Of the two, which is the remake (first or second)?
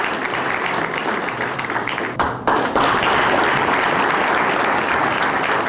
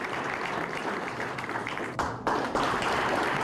second